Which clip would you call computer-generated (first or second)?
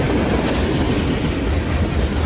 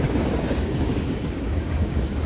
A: second